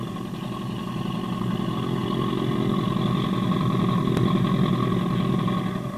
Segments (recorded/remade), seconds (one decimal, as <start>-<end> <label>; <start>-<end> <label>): 0.0-6.0 recorded